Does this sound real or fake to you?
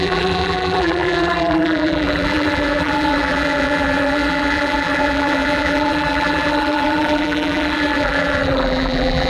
fake